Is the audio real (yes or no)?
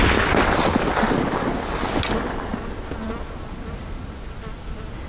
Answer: yes